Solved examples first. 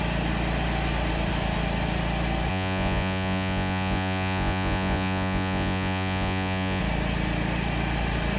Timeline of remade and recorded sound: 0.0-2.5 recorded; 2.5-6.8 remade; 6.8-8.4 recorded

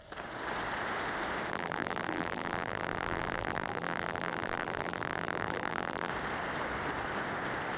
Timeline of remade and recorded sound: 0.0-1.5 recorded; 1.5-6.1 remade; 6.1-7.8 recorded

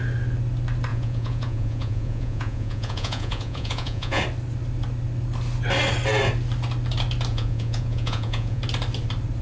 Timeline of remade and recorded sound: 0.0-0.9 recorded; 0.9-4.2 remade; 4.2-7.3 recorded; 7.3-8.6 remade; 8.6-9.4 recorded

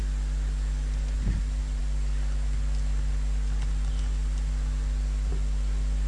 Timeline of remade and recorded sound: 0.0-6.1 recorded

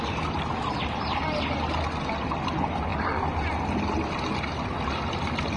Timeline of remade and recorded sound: 0.0-5.6 recorded